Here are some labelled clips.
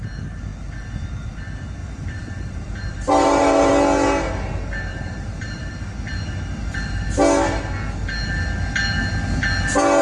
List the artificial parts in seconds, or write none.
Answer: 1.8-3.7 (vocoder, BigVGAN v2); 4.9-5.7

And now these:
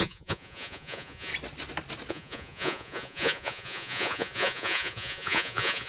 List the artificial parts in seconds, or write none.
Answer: 0.0-1.3 (vocoder, Vocos); 2.1-5.9

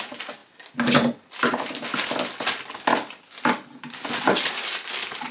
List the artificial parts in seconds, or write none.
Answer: none

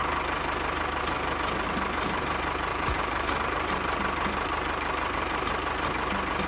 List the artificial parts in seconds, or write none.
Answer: 2.7-5.5 (vocoder, BigVGAN v2)

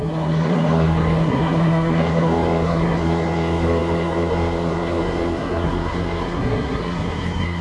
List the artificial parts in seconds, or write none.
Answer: 0.0-7.6 (codec, SNAC)

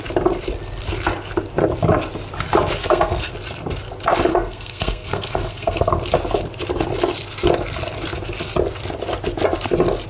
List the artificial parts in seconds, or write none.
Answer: 2.8-3.3 (codec, SNAC); 4.3-5.9

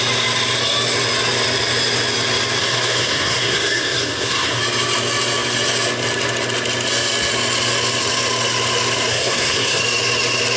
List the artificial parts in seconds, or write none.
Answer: 2.6-4.6 (codec, SNAC); 9.1-9.8

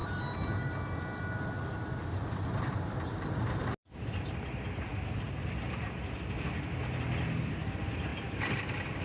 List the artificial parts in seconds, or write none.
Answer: 0.0-0.7 (vocoder, BigVGAN v2); 2.9-3.7